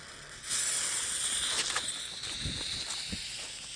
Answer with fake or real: real